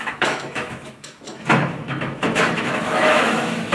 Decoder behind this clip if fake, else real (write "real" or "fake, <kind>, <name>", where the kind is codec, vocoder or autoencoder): fake, autoencoder, DAC-VAE